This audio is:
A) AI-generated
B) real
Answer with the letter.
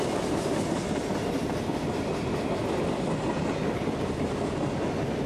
B